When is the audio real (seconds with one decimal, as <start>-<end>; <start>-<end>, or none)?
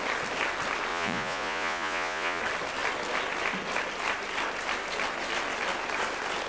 0.0-0.9; 2.4-6.5